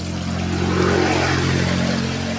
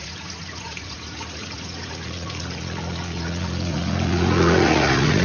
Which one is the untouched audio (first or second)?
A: first